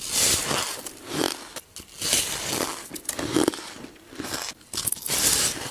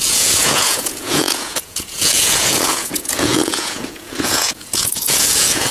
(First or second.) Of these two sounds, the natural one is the first